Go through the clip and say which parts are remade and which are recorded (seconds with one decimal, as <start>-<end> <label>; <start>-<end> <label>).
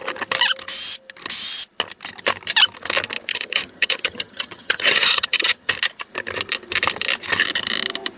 0.0-3.3 recorded; 3.3-5.7 remade; 5.7-8.2 recorded